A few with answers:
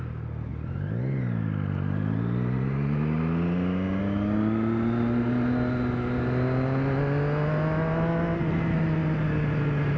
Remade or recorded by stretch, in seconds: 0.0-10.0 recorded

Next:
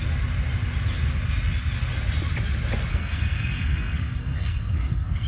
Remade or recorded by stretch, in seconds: 0.0-2.9 recorded; 2.9-5.3 remade

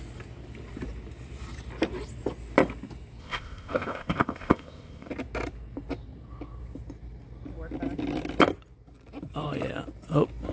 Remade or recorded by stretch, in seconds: 0.0-3.2 recorded; 3.2-5.1 remade; 5.1-10.5 recorded

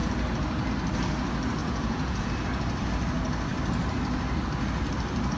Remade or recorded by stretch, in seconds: 0.0-1.6 recorded; 1.6-2.3 remade; 2.3-5.4 recorded